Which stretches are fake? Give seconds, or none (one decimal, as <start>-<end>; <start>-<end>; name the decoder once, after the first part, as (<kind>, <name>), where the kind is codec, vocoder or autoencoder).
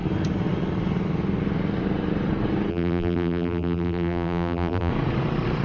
2.7-4.9 (vocoder, BigVGAN v2)